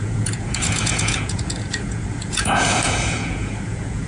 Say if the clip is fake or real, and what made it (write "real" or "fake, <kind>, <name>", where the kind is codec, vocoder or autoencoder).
fake, vocoder, Vocos